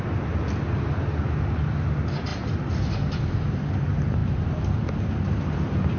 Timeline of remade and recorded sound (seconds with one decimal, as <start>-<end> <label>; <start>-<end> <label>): 0.0-6.0 recorded